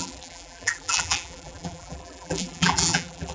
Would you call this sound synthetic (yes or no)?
yes